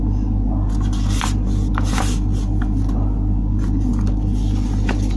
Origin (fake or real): real